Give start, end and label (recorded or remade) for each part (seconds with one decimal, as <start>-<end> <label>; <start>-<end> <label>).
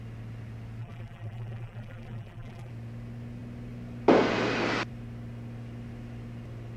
0.0-0.8 recorded; 0.8-2.7 remade; 2.7-6.8 recorded